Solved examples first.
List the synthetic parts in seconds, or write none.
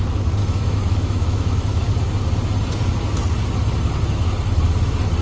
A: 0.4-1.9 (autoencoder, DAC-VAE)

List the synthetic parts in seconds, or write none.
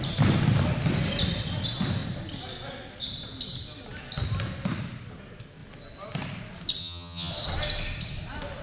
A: 6.8-7.3 (vocoder, HiFi-GAN)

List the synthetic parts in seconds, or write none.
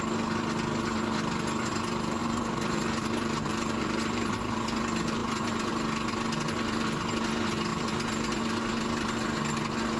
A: 2.2-4.4 (vocoder, BigVGAN v2)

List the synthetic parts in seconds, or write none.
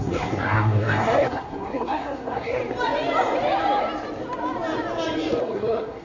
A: 0.0-2.6 (codec, SNAC); 5.4-6.0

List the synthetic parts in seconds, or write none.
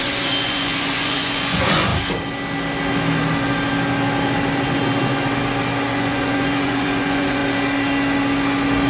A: 0.0-1.9 (vocoder, Vocos); 5.9-7.4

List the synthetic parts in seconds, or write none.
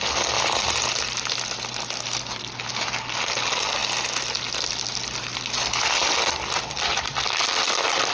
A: none